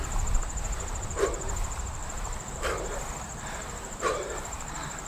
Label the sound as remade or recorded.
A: remade